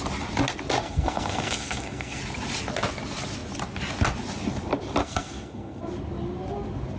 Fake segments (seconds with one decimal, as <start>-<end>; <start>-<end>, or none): 0.8-2.2; 5.0-5.8